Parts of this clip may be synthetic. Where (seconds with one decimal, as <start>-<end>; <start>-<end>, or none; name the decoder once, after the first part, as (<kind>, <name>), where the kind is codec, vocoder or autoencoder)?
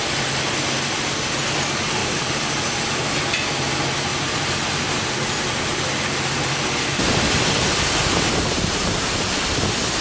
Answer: 2.0-2.5 (vocoder, BigVGAN v2); 4.1-5.4; 8.0-9.4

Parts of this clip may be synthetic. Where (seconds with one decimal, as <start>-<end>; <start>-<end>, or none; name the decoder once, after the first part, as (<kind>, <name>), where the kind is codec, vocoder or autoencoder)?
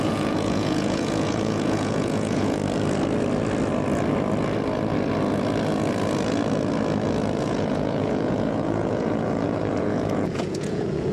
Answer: 0.0-2.6 (vocoder, Vocos); 7.4-11.1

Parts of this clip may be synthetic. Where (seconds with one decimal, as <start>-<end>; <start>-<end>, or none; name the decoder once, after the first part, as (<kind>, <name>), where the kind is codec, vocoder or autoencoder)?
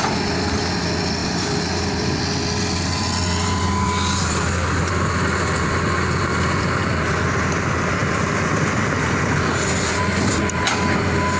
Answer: none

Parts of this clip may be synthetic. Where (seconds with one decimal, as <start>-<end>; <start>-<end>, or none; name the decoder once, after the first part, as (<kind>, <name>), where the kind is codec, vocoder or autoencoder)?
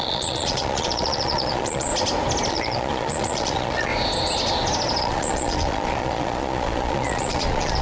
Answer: 0.0-1.9 (vocoder, Vocos); 2.5-3.9; 5.0-7.8